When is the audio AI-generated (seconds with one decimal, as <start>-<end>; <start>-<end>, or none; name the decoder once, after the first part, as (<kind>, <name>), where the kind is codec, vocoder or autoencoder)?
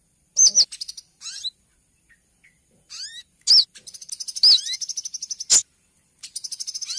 none